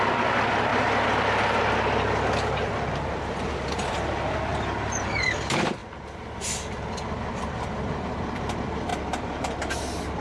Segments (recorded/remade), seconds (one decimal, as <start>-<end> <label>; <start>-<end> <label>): 0.0-0.7 remade; 0.7-2.5 recorded; 2.5-4.5 remade; 4.5-5.2 recorded; 5.2-5.8 remade; 5.8-7.4 recorded; 7.4-8.9 remade; 8.9-10.2 recorded